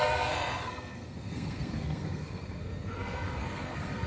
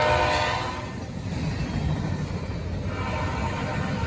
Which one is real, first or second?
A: second